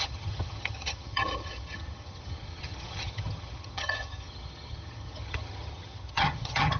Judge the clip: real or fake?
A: fake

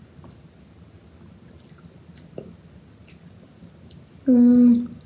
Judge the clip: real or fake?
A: real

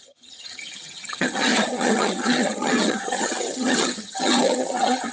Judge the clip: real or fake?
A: fake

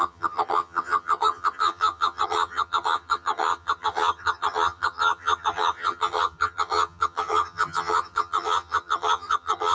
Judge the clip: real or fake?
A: fake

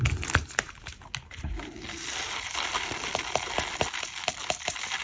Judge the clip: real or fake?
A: real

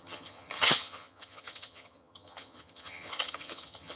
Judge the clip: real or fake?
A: fake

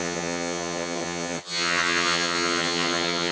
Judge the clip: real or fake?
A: fake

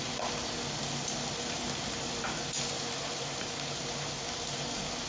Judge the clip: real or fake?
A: real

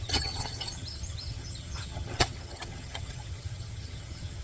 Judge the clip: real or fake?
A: fake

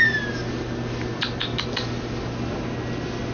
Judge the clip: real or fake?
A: real